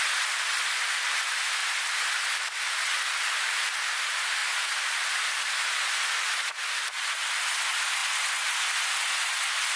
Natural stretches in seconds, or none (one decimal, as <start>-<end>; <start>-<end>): 0.0-9.8